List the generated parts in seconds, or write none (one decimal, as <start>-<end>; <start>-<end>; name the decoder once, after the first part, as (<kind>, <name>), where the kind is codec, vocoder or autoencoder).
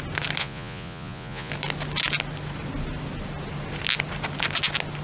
0.4-1.5 (vocoder, Vocos)